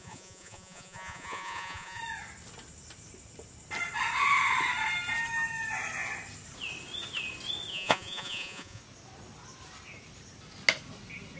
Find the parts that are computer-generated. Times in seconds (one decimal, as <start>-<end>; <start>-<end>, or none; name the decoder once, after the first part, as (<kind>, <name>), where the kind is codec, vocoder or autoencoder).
0.0-2.0 (vocoder, Vocos); 7.7-8.8